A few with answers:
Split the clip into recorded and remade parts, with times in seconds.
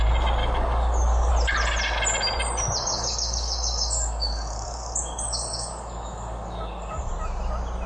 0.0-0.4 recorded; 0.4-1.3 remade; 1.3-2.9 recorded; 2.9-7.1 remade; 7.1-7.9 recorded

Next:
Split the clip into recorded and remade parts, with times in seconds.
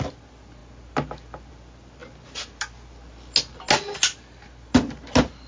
0.0-5.5 recorded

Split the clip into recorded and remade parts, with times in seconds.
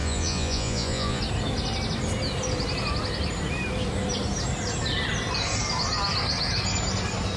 0.0-1.2 remade; 1.2-7.4 recorded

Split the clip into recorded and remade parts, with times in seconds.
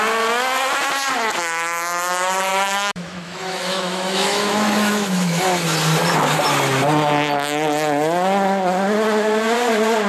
0.0-2.5 recorded; 2.5-5.4 remade; 5.4-10.1 recorded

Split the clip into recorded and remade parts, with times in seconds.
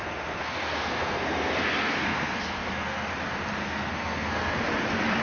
0.0-3.1 remade; 3.1-3.6 recorded; 3.6-4.6 remade; 4.6-5.2 recorded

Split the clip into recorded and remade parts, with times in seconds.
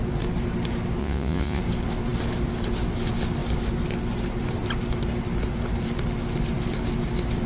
0.0-1.0 recorded; 1.0-1.6 remade; 1.6-7.5 recorded